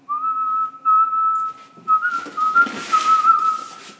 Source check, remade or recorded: recorded